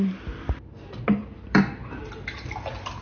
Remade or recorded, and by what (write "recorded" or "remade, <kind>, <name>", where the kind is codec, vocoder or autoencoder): recorded